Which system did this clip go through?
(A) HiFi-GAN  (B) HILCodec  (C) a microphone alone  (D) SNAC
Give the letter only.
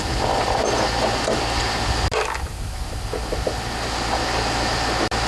C